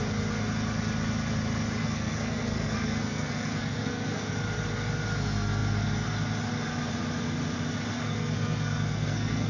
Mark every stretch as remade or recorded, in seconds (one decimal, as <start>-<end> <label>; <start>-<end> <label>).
0.0-1.8 recorded; 1.8-4.3 remade; 4.3-7.9 recorded; 7.9-9.5 remade